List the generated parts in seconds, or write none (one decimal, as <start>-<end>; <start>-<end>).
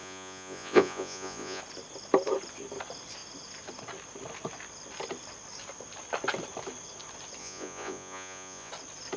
0.0-1.6; 7.4-8.7